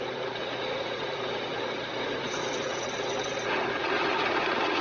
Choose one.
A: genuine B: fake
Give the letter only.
B